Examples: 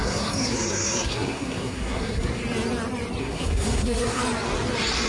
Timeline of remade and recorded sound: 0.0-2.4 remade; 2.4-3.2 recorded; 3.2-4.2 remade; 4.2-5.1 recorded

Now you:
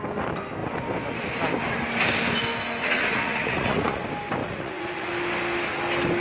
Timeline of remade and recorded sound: 0.0-2.8 recorded; 2.8-4.0 remade; 4.0-4.4 recorded; 4.4-5.1 remade; 5.1-6.2 recorded

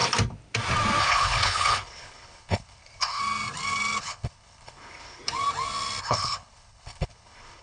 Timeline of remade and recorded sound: 0.0-1.0 recorded; 1.0-3.2 remade; 3.2-4.0 recorded; 4.0-5.2 remade; 5.2-6.0 recorded; 6.0-7.6 remade